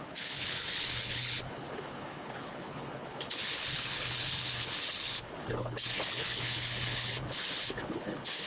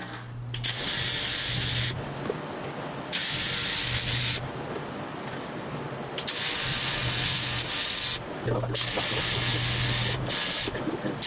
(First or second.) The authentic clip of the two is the second